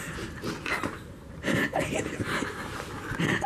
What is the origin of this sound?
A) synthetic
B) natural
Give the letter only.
B